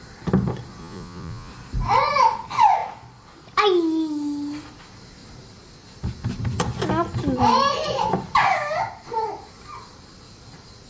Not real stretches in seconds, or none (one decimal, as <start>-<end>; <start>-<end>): 0.8-1.5